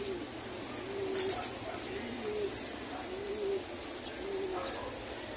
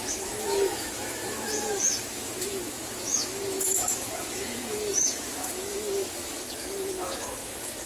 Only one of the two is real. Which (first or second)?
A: first